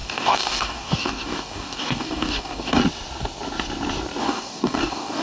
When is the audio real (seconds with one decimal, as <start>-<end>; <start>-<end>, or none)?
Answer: 2.8-4.2